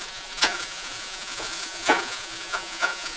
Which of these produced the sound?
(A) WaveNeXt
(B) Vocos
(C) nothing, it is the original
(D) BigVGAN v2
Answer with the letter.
B